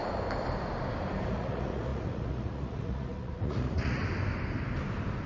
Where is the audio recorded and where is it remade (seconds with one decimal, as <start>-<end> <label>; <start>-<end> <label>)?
0.0-1.3 recorded; 1.3-4.0 remade; 4.0-5.3 recorded